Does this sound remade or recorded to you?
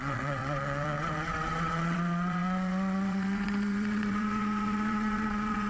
remade